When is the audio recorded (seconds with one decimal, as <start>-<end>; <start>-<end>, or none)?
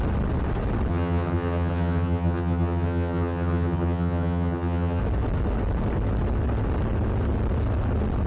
0.0-0.9; 5.0-8.3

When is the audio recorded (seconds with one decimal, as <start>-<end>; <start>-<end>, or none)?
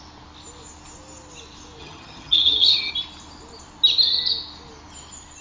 0.0-1.8; 2.9-5.4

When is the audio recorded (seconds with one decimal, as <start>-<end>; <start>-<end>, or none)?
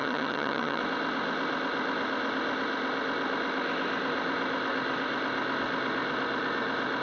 0.8-7.0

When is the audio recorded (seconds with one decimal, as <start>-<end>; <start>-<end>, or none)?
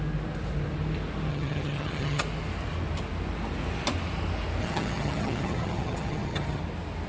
0.0-1.3; 2.2-4.6; 6.6-7.1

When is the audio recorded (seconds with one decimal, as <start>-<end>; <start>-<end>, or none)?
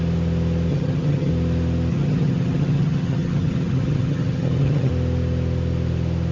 0.0-0.7; 1.3-1.9; 4.9-6.3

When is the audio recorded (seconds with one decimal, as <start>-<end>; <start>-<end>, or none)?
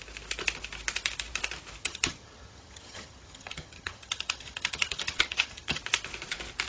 0.0-1.8; 5.8-6.7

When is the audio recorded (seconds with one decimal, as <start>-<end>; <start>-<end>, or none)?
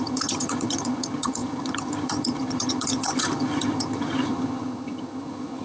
none